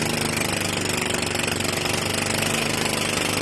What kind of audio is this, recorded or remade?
recorded